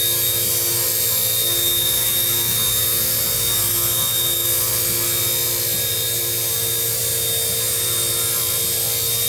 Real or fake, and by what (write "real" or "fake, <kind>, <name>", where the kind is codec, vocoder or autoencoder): real